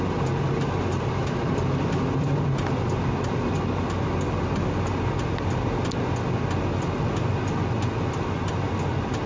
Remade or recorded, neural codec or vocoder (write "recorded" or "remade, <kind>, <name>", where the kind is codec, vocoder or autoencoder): recorded